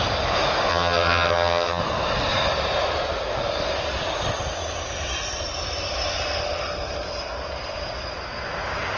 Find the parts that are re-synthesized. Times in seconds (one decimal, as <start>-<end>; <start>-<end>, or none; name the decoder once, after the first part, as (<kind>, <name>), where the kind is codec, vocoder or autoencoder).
0.7-1.8 (vocoder, HiFi-GAN)